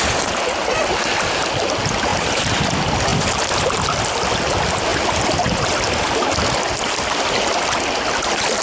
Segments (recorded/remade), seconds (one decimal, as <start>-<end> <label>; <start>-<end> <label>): 0.0-2.1 recorded; 2.1-2.6 remade; 2.6-8.6 recorded